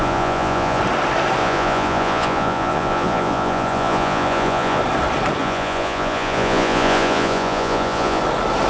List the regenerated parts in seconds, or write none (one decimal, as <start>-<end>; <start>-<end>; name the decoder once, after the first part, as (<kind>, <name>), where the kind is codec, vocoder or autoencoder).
0.0-0.8 (vocoder, Vocos); 1.4-4.8; 5.4-8.2